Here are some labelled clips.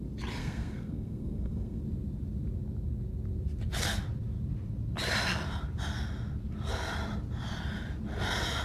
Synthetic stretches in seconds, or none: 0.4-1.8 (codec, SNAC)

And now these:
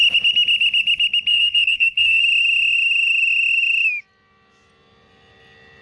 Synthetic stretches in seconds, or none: 1.3-2.2 (codec, SNAC)

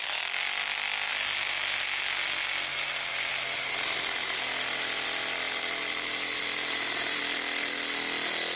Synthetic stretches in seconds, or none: 2.7-7.2 (vocoder, BigVGAN v2)

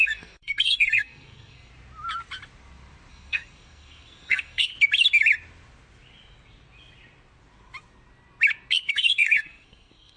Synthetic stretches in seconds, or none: 0.0-1.7 (codec, SNAC); 3.1-4.7; 8.9-10.2

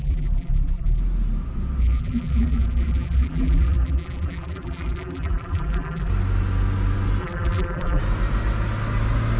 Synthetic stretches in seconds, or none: 0.0-1.0 (vocoder, BigVGAN v2); 1.8-6.1; 7.2-8.0